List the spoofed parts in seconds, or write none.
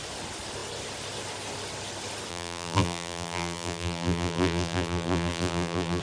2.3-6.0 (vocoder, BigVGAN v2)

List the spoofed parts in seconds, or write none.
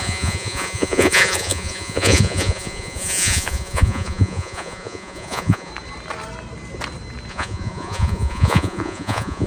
0.0-5.7 (vocoder, Vocos); 7.3-9.5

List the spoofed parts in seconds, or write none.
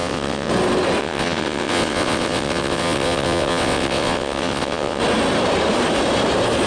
0.0-0.5 (vocoder, WaveNeXt); 1.0-5.0